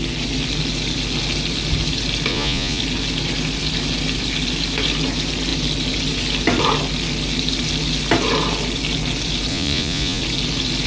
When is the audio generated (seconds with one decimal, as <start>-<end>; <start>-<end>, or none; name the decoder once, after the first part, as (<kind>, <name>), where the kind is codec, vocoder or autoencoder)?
2.3-2.8 (vocoder, Vocos); 9.5-10.2